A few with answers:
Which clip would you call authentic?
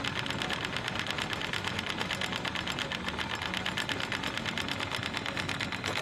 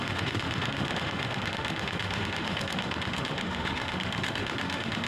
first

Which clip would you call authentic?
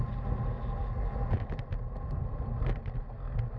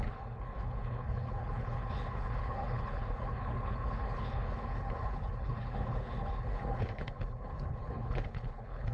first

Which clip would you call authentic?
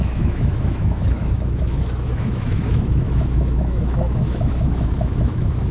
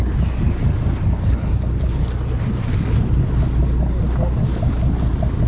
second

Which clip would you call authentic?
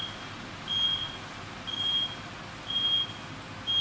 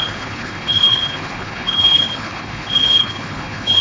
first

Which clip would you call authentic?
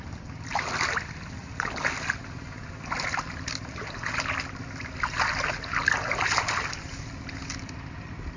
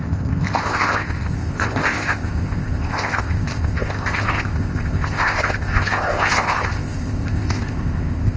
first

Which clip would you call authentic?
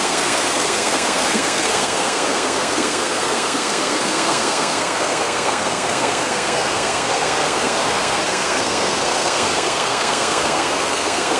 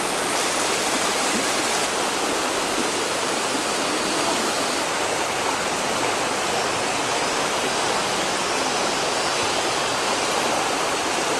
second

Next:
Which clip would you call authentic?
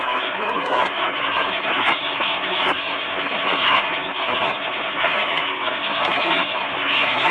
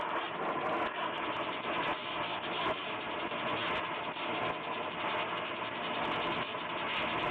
second